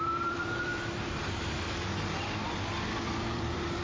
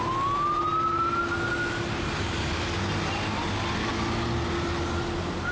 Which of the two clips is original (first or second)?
second